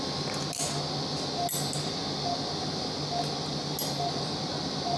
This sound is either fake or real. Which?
real